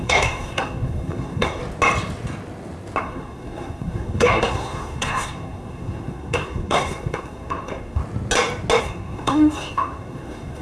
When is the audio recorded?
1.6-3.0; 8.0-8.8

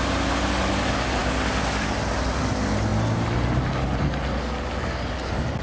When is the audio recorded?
0.0-5.6

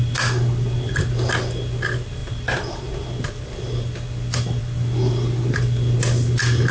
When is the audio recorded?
0.0-6.7

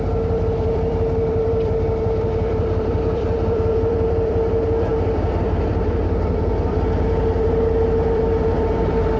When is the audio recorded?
none

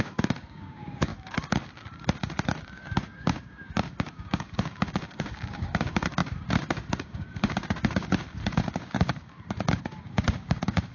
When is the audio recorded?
none

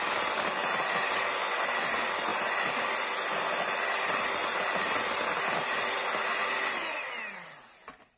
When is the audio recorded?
0.0-8.2

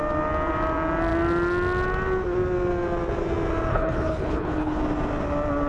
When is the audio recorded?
0.0-3.7; 4.8-5.7

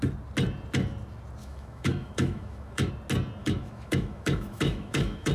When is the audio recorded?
0.0-1.4; 2.9-3.4